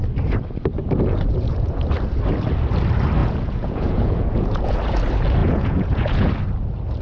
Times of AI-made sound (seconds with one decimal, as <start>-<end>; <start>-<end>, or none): 0.8-1.8; 3.2-4.8; 5.4-6.3

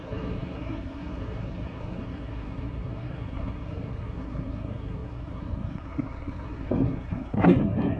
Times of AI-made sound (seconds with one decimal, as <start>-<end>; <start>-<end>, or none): 0.0-8.0

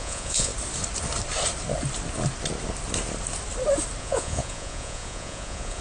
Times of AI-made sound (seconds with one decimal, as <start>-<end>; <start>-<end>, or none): 0.0-0.5; 4.0-5.8